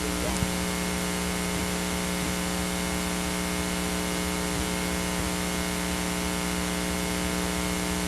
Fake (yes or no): no